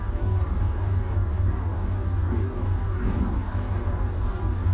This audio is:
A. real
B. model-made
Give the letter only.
B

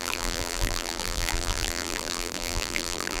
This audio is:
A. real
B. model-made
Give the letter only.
B